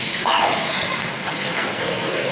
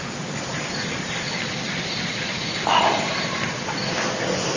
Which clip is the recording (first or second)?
second